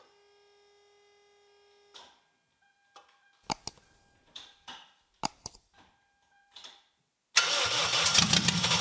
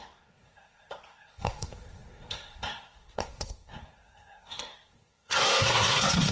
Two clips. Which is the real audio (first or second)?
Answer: first